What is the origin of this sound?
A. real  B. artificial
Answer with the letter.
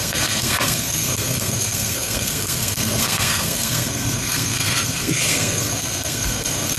B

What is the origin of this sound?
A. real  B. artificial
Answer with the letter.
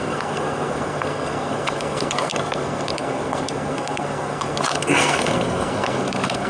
B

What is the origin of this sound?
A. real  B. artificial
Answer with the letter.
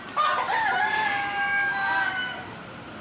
A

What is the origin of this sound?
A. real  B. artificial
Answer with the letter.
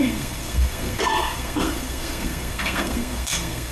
B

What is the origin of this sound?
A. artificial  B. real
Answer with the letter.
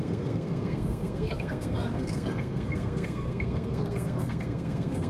A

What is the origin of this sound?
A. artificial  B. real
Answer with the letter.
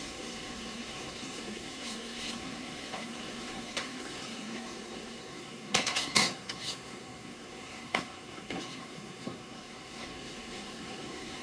A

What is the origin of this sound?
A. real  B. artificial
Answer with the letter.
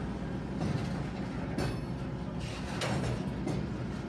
A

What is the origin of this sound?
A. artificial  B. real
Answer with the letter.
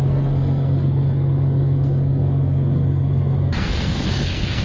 A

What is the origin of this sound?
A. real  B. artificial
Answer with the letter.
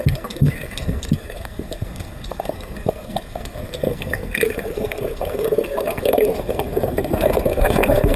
B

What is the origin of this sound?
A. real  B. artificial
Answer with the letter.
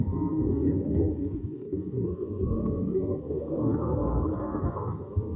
B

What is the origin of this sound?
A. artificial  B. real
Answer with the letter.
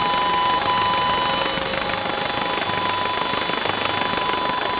B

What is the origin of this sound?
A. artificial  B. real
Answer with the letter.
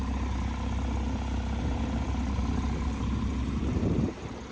B